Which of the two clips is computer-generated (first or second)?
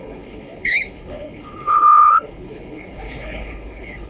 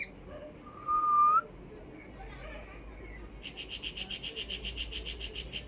first